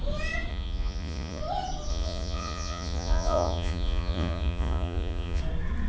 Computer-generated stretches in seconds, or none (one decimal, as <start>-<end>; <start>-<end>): 0.5-1.4; 1.9-5.4